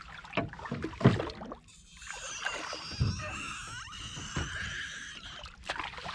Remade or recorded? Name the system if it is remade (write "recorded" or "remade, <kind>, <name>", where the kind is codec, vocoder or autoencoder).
recorded